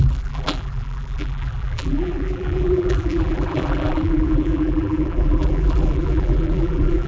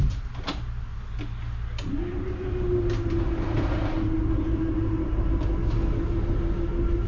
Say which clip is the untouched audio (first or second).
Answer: second